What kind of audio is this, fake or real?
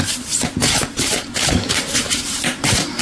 fake